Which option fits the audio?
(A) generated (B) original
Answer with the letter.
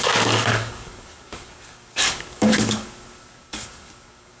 A